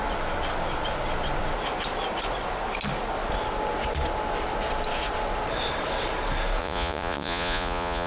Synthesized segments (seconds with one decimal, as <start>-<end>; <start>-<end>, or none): 6.6-8.1

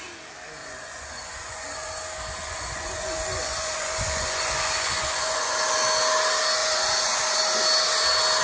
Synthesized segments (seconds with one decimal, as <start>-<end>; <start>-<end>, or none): 0.6-1.9; 2.4-5.6; 6.6-7.4

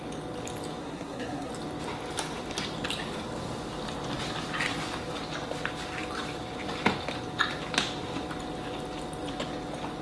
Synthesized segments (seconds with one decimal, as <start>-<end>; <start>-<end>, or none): 0.8-1.5

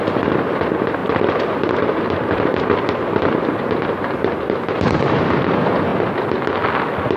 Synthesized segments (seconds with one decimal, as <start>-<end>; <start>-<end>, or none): 1.0-5.3

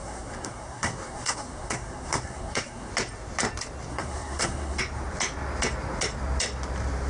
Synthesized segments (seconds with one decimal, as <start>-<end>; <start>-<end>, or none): 0.0-2.9; 3.9-4.8